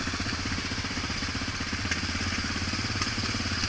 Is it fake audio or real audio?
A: real